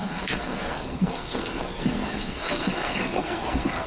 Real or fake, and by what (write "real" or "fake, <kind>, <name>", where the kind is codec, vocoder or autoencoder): fake, codec, SNAC